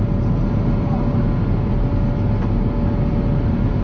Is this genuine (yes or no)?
yes